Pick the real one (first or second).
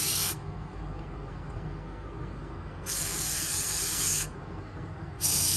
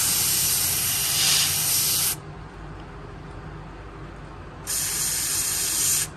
second